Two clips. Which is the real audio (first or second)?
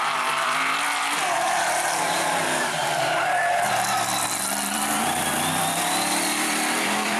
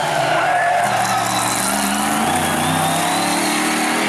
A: second